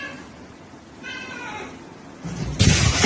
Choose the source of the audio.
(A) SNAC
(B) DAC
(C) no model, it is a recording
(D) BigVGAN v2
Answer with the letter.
C